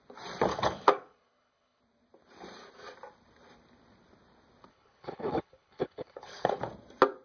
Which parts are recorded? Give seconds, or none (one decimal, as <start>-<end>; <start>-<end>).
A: 0.0-0.5; 1.8-4.7; 6.6-7.2